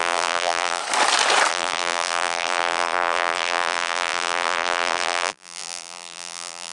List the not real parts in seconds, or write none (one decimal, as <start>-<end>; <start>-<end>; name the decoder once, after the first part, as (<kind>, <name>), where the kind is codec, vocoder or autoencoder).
0.0-0.8 (vocoder, BigVGAN v2); 1.5-6.7